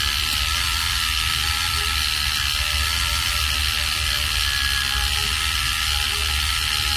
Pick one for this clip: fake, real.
real